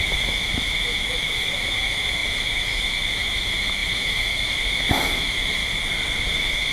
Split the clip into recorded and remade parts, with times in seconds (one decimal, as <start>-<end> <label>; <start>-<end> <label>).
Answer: 0.0-5.6 remade; 5.6-6.3 recorded; 6.3-6.7 remade